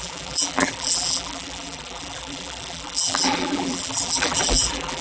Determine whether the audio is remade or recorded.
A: remade